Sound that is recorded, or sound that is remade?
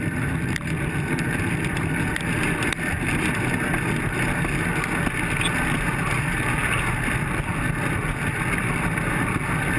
recorded